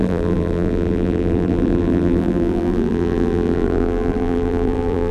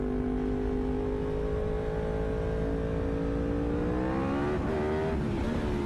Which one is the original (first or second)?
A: second